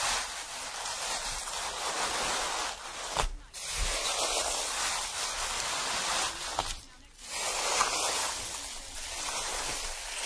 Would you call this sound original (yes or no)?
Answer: yes